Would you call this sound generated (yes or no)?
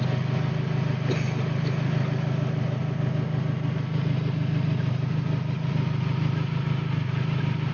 no